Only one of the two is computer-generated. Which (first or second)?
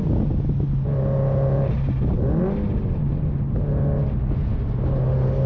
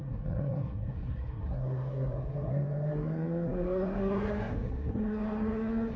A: second